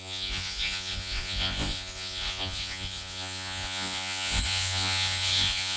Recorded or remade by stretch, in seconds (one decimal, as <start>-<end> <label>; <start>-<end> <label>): 0.0-5.8 remade